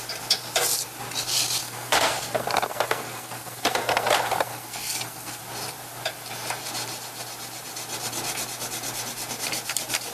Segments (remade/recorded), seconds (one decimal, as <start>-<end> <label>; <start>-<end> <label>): 0.0-1.6 recorded; 1.6-5.4 remade; 5.4-10.1 recorded